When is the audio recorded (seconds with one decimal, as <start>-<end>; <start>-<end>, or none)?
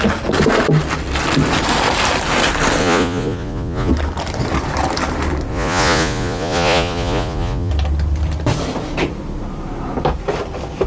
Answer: 0.0-2.8; 3.9-5.5; 7.7-10.9